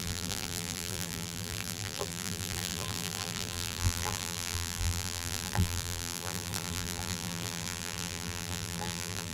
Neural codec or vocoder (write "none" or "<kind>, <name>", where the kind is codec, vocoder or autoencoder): vocoder, BigVGAN v2